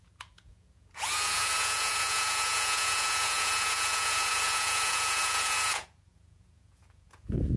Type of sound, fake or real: fake